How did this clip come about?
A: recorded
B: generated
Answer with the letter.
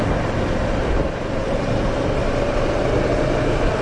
A